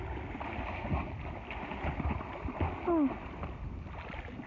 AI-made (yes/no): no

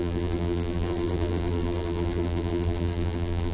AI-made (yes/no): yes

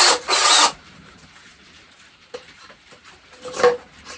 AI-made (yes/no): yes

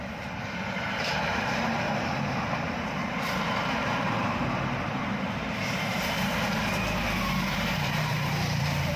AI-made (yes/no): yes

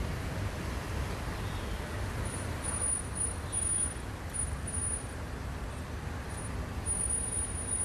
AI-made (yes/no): yes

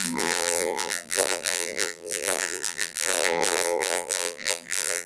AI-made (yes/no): yes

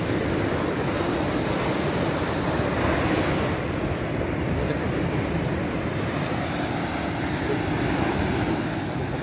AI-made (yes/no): no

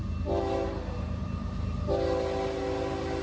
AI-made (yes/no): no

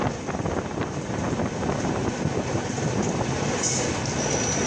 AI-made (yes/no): no